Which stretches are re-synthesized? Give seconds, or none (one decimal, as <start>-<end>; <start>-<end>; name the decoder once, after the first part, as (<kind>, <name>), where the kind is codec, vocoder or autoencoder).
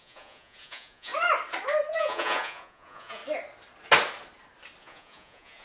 0.0-1.1 (vocoder, Vocos); 1.9-3.2; 4.8-5.6